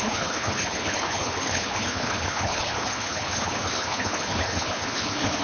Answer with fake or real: fake